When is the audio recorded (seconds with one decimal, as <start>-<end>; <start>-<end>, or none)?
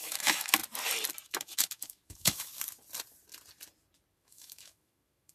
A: 0.6-1.3; 2.5-4.1